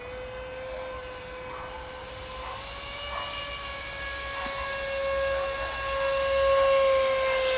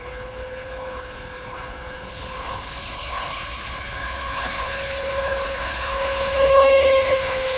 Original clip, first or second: first